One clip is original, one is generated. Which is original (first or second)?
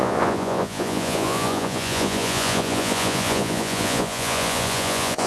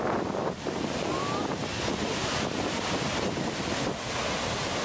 second